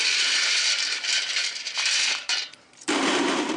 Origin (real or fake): fake